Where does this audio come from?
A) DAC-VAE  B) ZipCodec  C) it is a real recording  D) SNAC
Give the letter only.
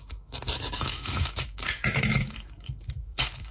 A